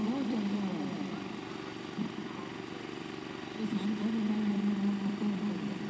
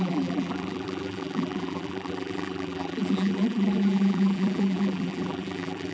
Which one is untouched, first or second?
first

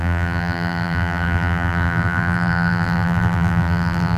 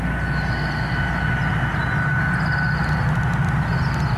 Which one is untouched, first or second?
second